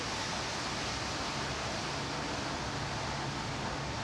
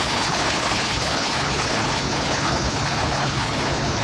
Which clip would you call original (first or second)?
first